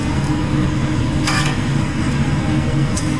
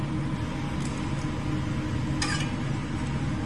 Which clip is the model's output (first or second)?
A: first